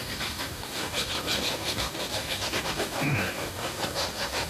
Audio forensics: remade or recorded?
remade